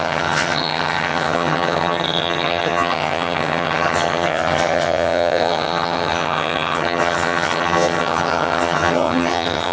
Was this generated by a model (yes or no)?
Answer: yes